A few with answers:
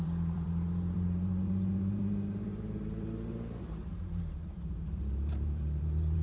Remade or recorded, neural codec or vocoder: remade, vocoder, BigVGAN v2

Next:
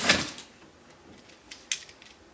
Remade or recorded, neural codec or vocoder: recorded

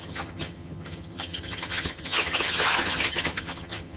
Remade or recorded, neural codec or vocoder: remade, vocoder, HiFi-GAN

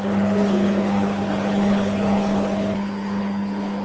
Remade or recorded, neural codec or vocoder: remade, codec, HILCodec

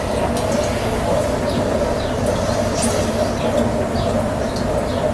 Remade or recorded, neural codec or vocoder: recorded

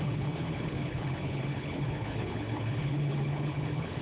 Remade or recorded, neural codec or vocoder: remade, codec, HILCodec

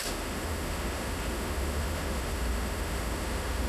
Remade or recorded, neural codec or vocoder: remade, autoencoder, DAC-VAE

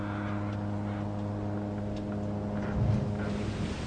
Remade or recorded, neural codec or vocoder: recorded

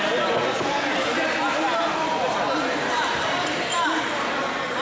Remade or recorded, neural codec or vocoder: recorded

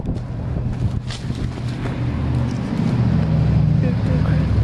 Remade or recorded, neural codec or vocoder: recorded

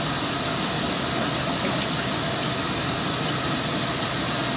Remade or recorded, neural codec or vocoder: recorded